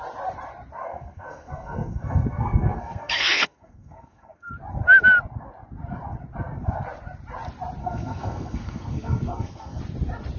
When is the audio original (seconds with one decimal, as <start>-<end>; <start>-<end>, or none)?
0.0-0.8; 4.5-7.8; 9.8-10.4

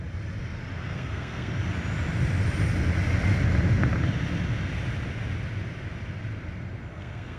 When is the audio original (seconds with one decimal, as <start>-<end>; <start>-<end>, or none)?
0.0-0.9; 1.5-6.9

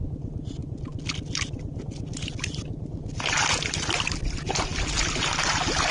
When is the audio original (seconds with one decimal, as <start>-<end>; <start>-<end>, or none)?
0.0-5.9

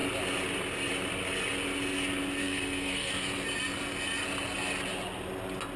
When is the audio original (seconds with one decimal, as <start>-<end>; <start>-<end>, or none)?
0.0-2.4; 3.1-5.8

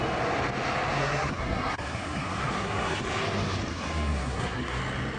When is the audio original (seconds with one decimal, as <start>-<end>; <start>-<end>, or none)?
0.0-1.0; 3.0-3.7; 4.8-5.2

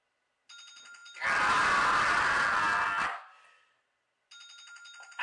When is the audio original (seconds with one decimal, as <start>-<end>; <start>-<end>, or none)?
0.0-5.2

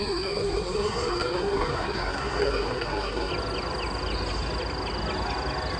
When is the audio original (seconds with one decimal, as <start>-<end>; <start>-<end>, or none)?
3.3-5.8